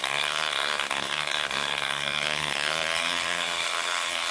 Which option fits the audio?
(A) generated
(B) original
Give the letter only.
A